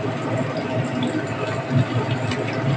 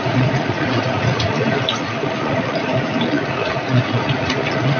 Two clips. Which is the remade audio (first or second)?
second